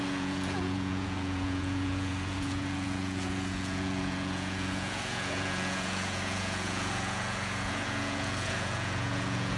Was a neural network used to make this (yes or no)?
yes